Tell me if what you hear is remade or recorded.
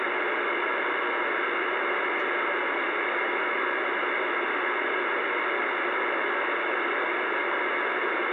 recorded